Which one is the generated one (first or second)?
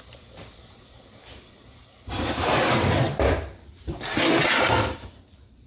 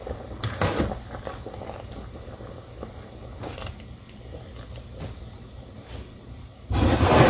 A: first